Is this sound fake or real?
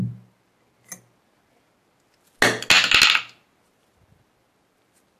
real